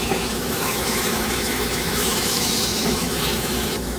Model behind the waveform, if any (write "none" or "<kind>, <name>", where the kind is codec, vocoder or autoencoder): autoencoder, DAC-VAE